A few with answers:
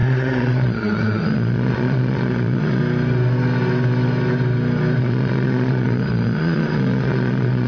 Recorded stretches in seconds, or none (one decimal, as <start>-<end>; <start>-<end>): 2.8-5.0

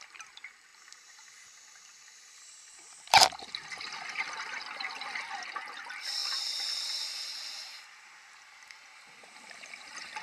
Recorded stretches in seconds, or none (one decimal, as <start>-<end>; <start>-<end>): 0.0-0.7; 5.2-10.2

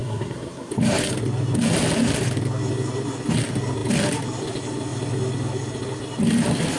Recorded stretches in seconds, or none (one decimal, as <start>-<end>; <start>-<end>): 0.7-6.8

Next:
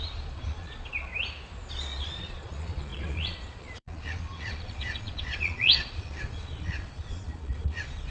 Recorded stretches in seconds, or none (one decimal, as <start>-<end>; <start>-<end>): 1.1-1.7

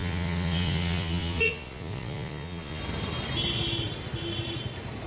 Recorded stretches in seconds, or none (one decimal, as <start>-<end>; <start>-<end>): 2.8-5.1

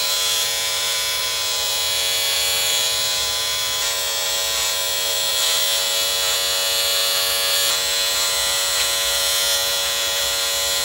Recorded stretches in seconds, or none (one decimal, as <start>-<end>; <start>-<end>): none